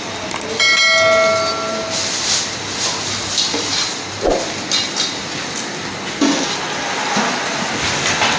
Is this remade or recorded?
recorded